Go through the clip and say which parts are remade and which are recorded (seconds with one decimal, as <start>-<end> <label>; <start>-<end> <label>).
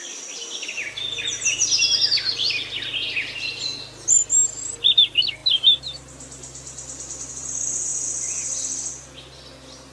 0.0-9.9 recorded